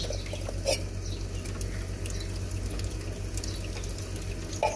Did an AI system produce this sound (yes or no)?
no